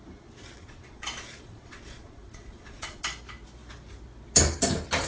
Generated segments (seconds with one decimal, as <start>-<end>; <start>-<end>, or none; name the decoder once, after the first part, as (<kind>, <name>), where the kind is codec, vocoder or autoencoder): 0.6-3.0 (vocoder, Vocos)